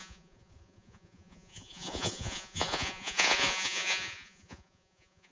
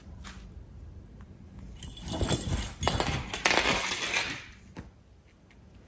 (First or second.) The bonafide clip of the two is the second